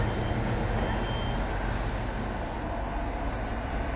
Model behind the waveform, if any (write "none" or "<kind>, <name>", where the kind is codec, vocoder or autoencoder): none